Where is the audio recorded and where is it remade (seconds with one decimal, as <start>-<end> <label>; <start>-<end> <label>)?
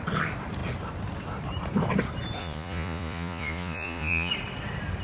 0.0-2.4 recorded; 2.4-4.3 remade; 4.3-5.0 recorded